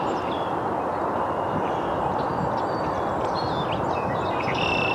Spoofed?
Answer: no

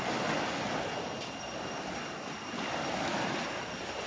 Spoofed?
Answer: no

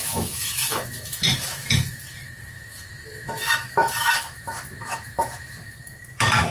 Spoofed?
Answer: yes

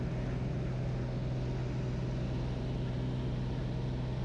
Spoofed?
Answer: no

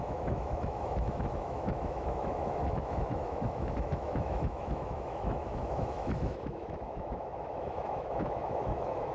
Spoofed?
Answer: yes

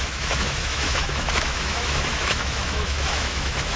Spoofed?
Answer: yes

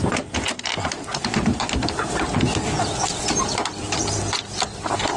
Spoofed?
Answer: no